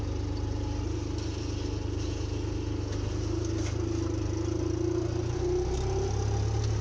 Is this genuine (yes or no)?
yes